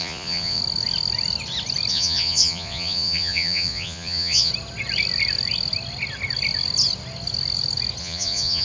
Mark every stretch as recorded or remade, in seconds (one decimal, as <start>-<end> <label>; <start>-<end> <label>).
0.0-0.6 remade; 0.6-1.9 recorded; 1.9-4.5 remade; 4.5-8.0 recorded; 8.0-8.6 remade